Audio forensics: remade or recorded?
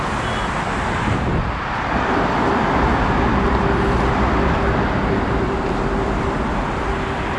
recorded